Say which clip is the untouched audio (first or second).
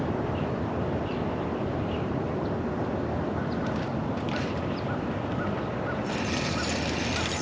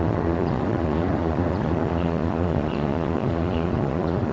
first